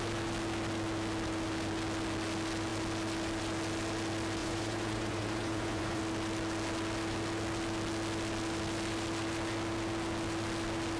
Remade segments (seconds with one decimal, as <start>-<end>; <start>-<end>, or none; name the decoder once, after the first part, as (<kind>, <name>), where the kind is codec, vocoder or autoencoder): 4.4-6.0 (vocoder, Vocos)

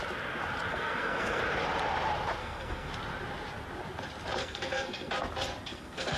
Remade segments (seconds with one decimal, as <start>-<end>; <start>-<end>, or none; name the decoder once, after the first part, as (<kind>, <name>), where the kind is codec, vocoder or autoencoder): 0.7-1.4 (codec, SNAC); 2.4-2.9; 4.4-5.1; 5.7-6.2